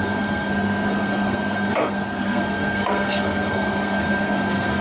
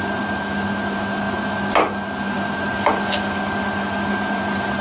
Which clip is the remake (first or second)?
first